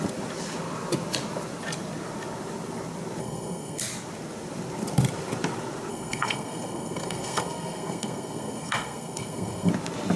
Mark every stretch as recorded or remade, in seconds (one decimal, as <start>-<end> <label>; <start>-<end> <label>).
0.0-3.2 recorded; 3.2-3.8 remade; 3.8-5.9 recorded; 5.9-9.7 remade; 9.7-10.2 recorded